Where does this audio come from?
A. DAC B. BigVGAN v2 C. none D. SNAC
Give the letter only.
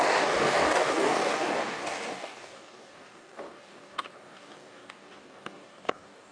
A